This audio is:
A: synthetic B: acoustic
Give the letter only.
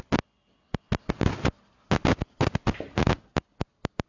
B